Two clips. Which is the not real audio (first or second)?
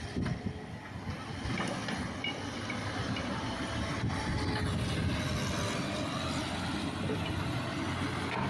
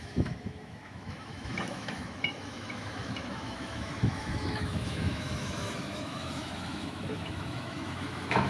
second